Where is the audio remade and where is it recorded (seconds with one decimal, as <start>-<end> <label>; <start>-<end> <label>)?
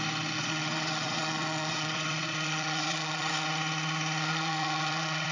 0.0-0.4 recorded; 0.4-3.3 remade; 3.3-4.3 recorded; 4.3-5.3 remade